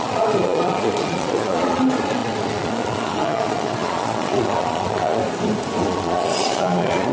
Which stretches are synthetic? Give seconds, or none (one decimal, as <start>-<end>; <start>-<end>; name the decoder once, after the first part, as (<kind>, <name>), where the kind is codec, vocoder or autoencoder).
0.0-5.2 (vocoder, Vocos); 5.8-7.1